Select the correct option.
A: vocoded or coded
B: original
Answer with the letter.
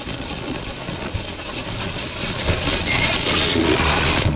A